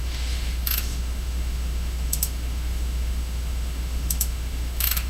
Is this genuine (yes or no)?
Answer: no